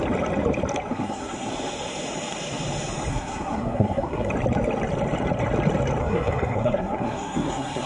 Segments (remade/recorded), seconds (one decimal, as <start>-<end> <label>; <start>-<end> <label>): 0.0-0.9 recorded; 0.9-1.5 remade; 1.5-3.1 recorded; 3.1-4.3 remade; 4.3-6.0 recorded; 6.0-7.9 remade

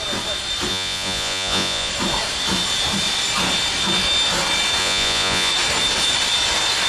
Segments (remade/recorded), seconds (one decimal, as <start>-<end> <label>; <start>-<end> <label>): 0.0-0.7 recorded; 0.7-1.9 remade; 1.9-4.8 recorded; 4.8-5.5 remade; 5.5-6.9 recorded

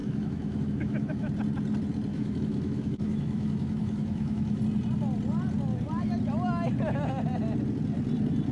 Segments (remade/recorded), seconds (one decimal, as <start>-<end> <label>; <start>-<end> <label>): 0.0-1.3 remade; 1.3-2.1 recorded; 2.1-4.6 remade; 4.6-8.5 recorded

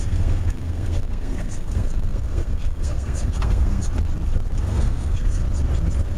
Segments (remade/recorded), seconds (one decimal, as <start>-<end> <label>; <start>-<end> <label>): 0.0-3.8 remade; 3.8-4.6 recorded; 4.6-5.4 remade; 5.4-6.2 recorded